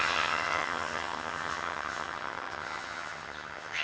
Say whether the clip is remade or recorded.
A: remade